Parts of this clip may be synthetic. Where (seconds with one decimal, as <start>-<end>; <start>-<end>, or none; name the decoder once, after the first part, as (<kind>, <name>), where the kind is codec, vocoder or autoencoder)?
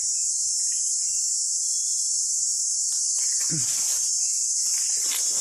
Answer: none